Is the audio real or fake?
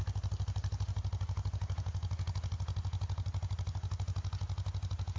real